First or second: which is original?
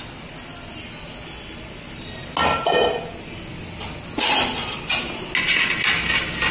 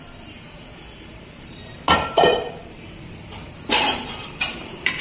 first